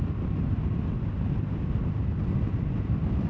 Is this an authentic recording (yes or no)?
yes